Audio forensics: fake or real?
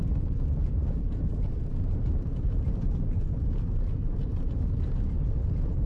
fake